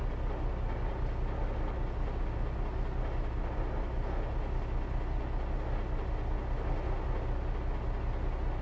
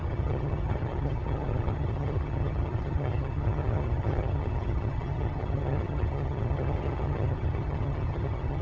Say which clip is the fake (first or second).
second